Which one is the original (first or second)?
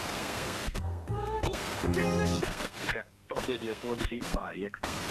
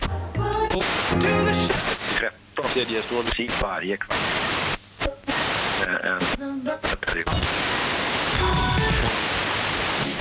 second